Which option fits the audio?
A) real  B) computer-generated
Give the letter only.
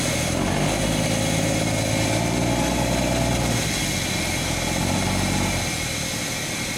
A